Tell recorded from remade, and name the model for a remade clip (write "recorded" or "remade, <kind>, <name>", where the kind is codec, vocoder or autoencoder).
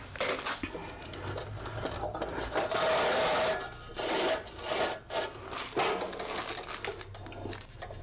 recorded